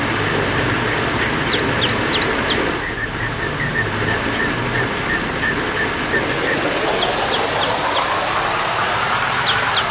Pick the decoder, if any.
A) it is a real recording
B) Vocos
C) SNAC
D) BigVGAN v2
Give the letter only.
A